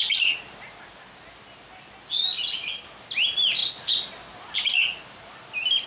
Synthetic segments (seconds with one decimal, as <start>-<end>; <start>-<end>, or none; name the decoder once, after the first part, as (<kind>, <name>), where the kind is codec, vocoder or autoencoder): none